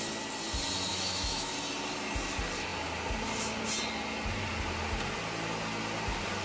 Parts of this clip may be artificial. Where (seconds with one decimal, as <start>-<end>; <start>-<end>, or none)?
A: 0.9-1.5